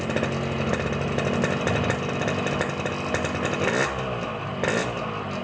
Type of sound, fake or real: real